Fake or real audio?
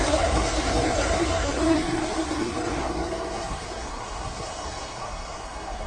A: fake